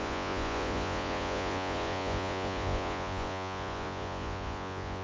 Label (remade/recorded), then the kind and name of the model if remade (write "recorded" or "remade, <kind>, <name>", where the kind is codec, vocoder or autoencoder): remade, vocoder, Vocos